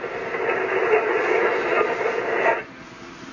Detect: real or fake real